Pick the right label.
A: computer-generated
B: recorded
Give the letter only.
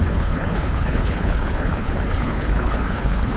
A